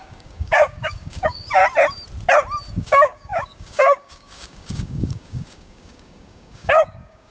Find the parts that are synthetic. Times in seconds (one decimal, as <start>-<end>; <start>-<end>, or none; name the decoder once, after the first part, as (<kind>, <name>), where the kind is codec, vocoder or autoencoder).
0.0-1.6 (codec, DAC); 2.7-7.3